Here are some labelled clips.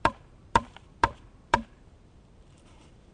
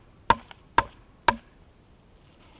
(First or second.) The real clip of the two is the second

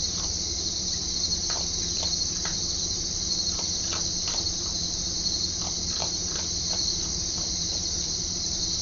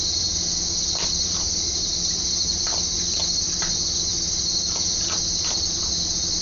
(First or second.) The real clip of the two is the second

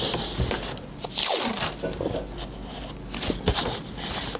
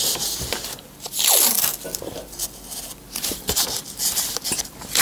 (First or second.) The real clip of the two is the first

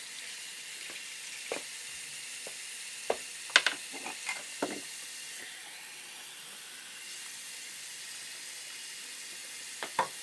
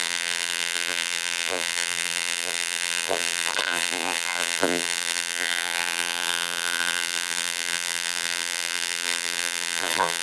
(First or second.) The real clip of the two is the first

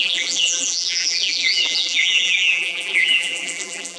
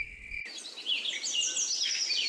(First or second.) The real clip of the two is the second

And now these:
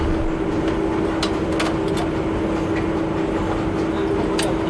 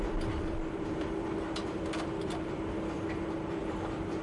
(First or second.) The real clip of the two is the first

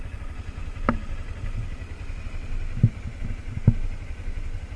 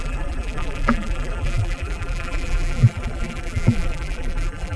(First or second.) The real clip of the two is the first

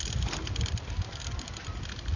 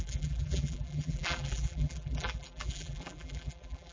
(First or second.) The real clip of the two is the first